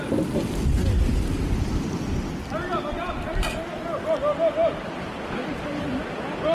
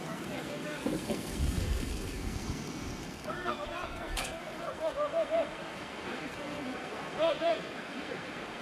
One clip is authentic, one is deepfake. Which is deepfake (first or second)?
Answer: second